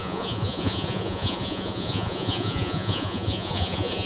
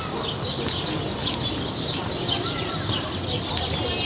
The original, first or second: second